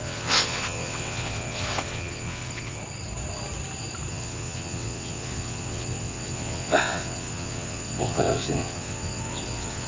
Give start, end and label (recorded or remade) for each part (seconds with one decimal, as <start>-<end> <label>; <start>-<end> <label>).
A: 0.0-2.8 remade; 2.8-4.1 recorded; 4.1-9.9 remade